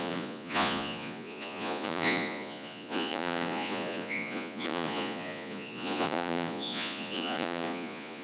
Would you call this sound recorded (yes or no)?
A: no